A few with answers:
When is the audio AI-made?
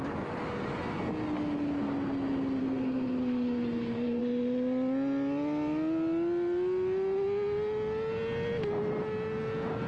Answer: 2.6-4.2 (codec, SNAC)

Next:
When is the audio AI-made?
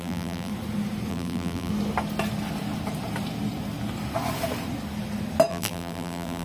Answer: 0.0-0.5 (vocoder, BigVGAN v2); 1.1-1.7; 5.5-6.4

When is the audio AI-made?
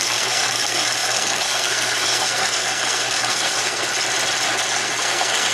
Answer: 0.0-3.9 (codec, SNAC); 4.7-5.5